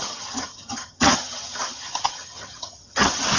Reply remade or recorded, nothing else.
remade